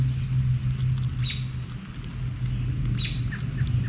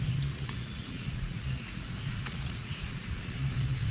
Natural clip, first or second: first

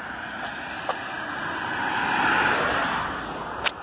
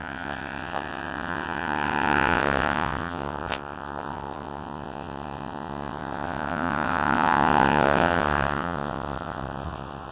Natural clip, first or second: first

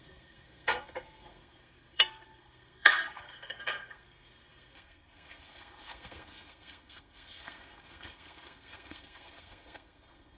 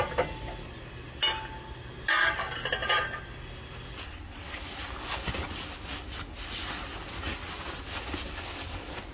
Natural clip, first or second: second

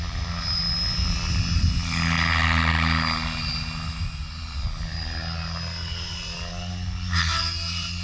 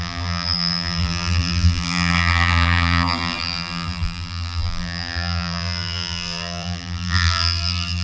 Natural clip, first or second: first